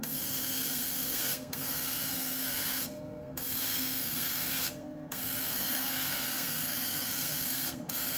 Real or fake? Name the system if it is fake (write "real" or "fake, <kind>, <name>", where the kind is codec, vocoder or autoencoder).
fake, codec, SNAC